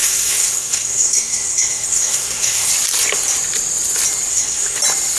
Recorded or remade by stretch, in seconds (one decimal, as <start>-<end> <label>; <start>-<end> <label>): 0.0-2.7 remade; 2.7-4.3 recorded; 4.3-4.8 remade; 4.8-5.2 recorded